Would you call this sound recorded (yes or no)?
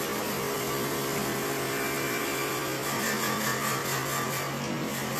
yes